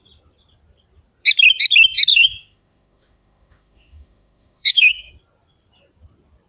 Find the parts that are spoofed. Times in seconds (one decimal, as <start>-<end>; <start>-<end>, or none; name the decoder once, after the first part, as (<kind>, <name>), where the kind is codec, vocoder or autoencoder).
2.1-5.1 (autoencoder, DAC-VAE)